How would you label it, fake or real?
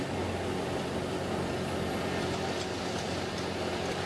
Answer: real